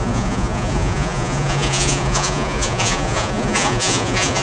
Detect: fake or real fake